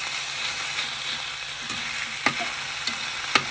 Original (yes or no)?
yes